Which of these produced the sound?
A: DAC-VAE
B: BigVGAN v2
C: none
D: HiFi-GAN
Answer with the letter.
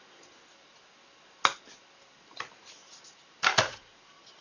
C